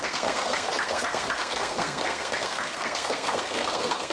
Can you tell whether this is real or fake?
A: fake